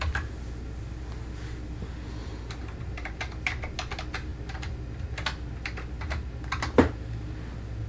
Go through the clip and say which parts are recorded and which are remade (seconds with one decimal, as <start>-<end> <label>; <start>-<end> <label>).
0.0-2.2 recorded; 2.2-3.2 remade; 3.2-7.9 recorded